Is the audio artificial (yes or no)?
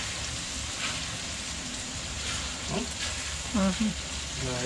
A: no